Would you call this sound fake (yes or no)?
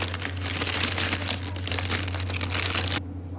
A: no